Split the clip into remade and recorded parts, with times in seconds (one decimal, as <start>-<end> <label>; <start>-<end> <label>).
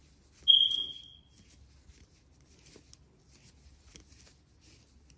0.0-5.2 recorded